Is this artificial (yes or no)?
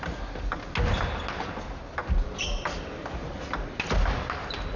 no